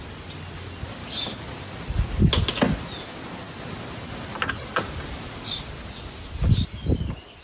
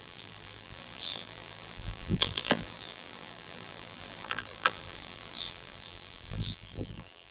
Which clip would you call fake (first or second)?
second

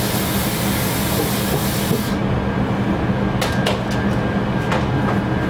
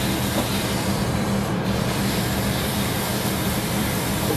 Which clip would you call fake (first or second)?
second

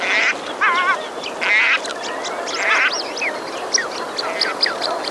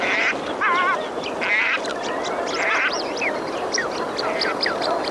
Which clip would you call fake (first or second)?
second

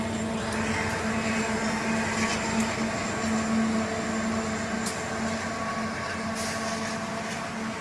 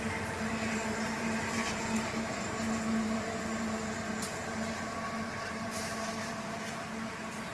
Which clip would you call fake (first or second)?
second